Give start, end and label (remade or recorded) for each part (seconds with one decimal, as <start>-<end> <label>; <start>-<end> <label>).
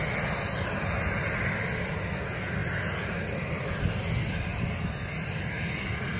0.0-6.2 recorded